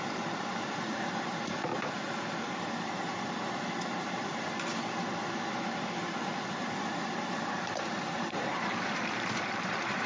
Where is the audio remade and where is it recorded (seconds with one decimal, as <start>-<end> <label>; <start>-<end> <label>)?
0.0-1.7 remade; 1.7-4.0 recorded; 4.0-10.1 remade